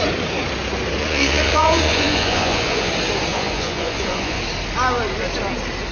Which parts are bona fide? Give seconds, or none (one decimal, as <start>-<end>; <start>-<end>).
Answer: 0.0-1.0; 2.9-3.3; 4.4-5.9